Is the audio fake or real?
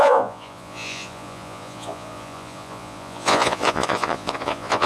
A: fake